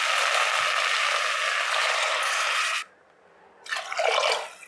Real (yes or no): yes